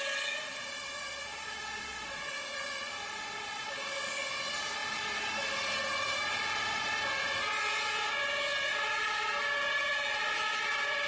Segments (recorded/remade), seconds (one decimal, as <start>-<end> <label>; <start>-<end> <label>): 0.0-11.1 recorded

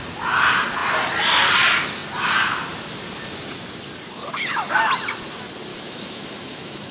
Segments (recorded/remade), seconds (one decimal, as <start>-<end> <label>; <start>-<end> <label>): 0.0-5.7 recorded; 5.7-6.9 remade

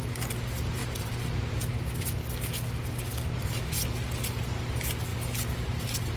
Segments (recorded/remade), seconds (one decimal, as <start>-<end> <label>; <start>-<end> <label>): 0.0-5.1 recorded; 5.1-6.2 remade

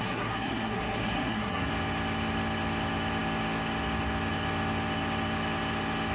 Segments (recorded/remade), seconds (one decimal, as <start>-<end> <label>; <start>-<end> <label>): 0.0-1.7 remade; 1.7-6.1 recorded

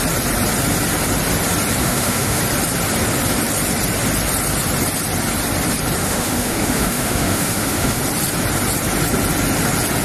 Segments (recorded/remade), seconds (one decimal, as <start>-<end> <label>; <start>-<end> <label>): 0.0-1.8 recorded; 1.8-2.4 remade; 2.4-6.0 recorded; 6.0-8.0 remade; 8.0-10.0 recorded